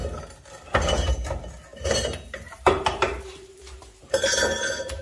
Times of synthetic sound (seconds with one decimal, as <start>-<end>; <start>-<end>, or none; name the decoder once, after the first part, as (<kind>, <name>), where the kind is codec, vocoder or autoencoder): 1.7-5.0 (vocoder, BigVGAN v2)